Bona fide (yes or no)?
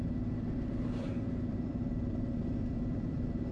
no